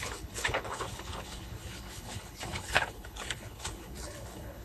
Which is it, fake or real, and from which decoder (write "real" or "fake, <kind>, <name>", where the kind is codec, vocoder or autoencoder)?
fake, codec, HILCodec